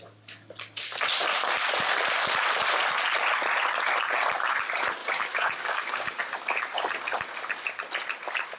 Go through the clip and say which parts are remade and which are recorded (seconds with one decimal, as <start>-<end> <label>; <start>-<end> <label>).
0.0-5.0 recorded; 5.0-6.2 remade; 6.2-8.6 recorded